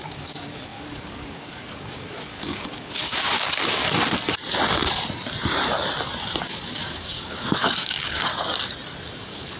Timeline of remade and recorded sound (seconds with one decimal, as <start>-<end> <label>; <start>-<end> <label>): 0.0-3.8 remade; 3.8-6.4 recorded; 6.4-8.3 remade; 8.3-9.1 recorded; 9.1-9.6 remade